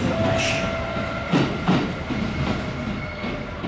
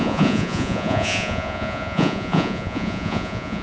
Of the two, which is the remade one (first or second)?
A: second